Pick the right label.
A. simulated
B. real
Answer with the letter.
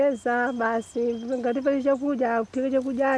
B